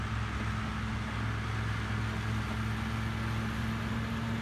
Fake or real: real